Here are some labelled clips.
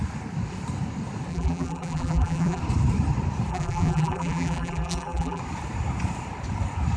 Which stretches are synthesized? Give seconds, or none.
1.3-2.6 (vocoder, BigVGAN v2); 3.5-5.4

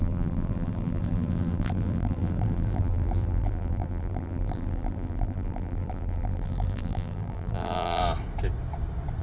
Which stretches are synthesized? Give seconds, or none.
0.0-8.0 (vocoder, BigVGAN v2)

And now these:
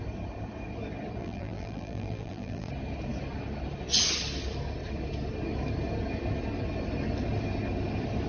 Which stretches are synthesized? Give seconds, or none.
1.2-2.7 (vocoder, BigVGAN v2)

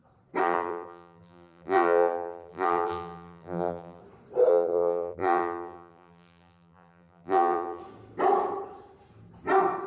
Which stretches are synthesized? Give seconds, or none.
0.4-4.0 (vocoder, BigVGAN v2); 4.5-7.8